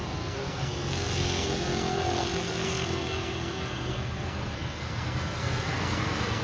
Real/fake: fake